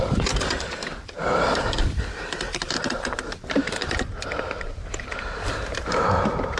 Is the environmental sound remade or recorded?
remade